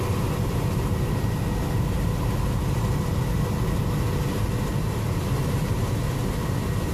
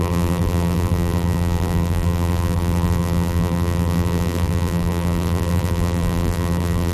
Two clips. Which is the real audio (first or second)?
first